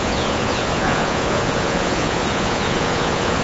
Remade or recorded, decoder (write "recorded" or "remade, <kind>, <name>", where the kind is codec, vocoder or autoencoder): remade, vocoder, Vocos